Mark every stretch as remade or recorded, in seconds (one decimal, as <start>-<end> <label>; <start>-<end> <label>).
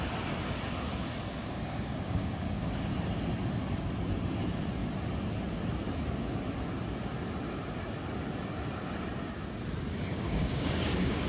0.0-1.4 recorded; 1.4-2.7 remade; 2.7-10.1 recorded; 10.1-11.3 remade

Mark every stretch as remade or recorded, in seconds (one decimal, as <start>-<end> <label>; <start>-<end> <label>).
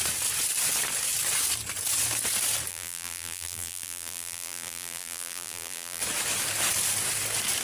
0.0-2.7 recorded; 2.7-6.0 remade; 6.0-7.6 recorded